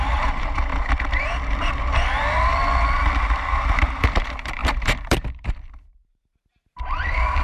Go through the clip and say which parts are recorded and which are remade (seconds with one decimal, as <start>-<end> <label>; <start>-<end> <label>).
0.0-0.7 remade; 0.7-3.5 recorded; 3.5-7.4 remade